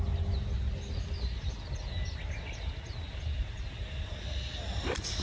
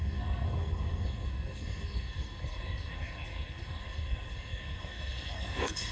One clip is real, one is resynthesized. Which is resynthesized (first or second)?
second